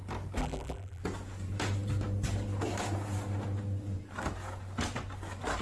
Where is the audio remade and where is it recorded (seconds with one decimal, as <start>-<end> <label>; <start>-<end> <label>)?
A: 0.0-0.4 recorded; 0.4-1.0 remade; 1.0-5.6 recorded